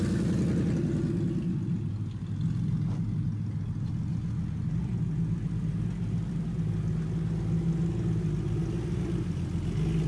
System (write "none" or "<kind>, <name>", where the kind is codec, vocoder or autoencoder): none